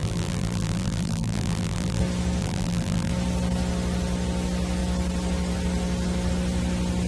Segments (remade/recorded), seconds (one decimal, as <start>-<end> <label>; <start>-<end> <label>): 0.0-2.0 remade; 2.0-2.4 recorded; 2.4-3.1 remade; 3.1-7.1 recorded